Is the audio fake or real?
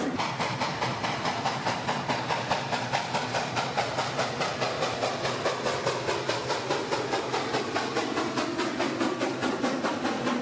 real